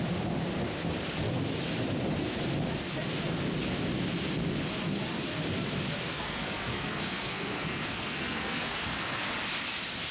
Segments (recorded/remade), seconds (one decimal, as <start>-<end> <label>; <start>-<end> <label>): 0.0-6.1 recorded; 6.1-9.3 remade; 9.3-10.1 recorded